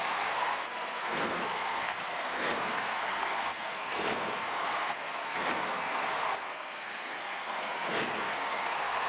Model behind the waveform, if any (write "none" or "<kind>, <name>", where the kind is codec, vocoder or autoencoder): codec, SNAC